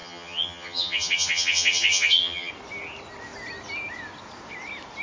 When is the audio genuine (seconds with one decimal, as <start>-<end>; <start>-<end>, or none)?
2.5-5.0

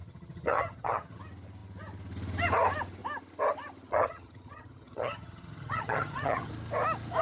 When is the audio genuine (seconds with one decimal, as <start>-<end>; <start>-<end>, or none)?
1.2-3.9; 6.5-7.2